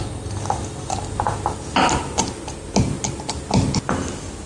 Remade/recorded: recorded